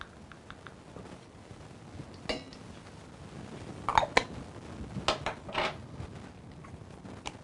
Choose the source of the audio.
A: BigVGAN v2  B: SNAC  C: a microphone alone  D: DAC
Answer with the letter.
C